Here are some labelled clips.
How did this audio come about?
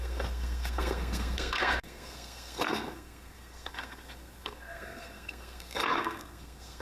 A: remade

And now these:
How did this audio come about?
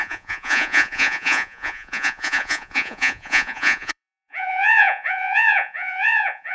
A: remade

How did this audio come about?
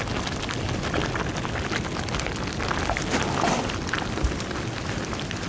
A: recorded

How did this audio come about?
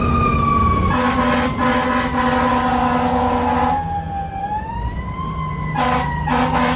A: recorded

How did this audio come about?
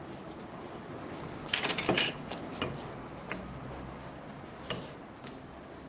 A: recorded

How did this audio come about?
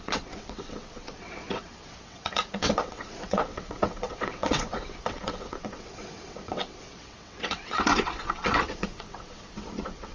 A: remade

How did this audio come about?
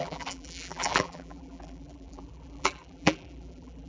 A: remade